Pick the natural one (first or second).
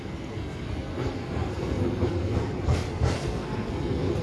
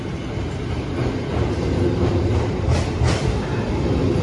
second